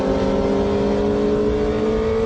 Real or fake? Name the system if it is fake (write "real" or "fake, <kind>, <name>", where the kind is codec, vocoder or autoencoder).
real